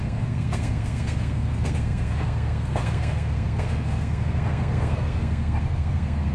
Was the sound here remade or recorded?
remade